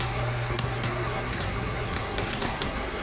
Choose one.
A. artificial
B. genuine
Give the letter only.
A